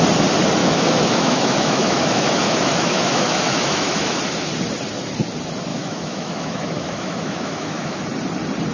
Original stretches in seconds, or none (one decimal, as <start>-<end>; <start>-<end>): 0.0-0.6; 4.2-5.7; 8.0-8.7